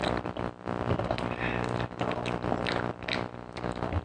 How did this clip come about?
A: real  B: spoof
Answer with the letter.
A